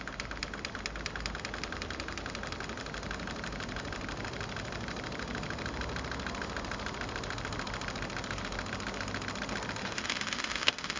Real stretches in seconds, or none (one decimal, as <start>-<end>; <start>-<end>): 0.0-9.8